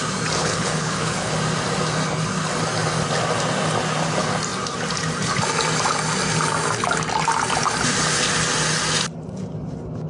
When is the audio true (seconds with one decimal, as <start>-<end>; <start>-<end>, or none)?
0.0-0.4; 1.3-10.1